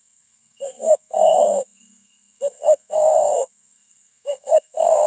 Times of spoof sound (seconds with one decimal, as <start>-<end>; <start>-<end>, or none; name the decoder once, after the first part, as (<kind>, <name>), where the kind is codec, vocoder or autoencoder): 0.0-5.1 (codec, SNAC)